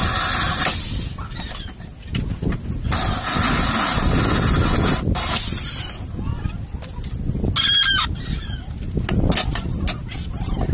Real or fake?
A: real